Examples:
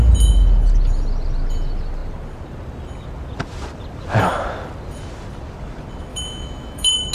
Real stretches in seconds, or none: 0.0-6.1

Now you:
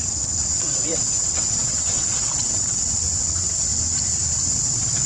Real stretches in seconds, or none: 3.7-4.6

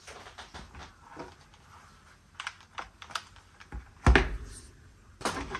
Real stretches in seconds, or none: 0.0-5.6